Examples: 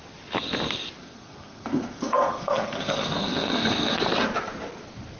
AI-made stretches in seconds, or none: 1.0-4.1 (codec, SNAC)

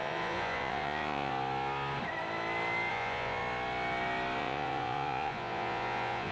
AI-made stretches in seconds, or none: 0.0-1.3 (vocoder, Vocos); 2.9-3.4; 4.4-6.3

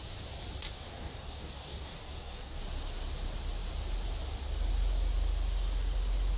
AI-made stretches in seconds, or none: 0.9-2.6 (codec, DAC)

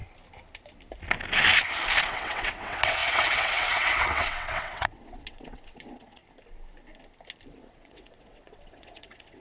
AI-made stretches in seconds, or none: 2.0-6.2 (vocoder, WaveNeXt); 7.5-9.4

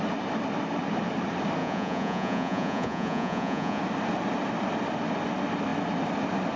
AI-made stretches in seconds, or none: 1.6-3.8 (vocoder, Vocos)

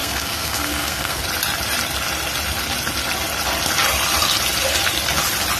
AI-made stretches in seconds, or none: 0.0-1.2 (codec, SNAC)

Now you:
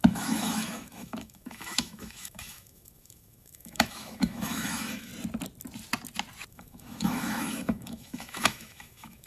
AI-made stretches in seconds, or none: 0.0-5.1 (autoencoder, DAC-VAE); 6.5-9.3